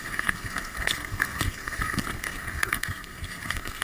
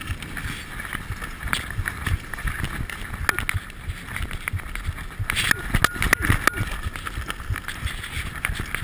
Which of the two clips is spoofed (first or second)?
first